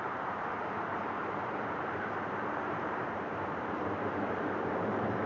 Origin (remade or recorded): remade